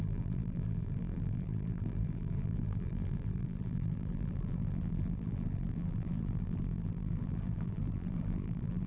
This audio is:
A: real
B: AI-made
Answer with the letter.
B